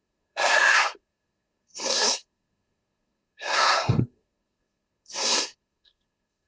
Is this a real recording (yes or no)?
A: no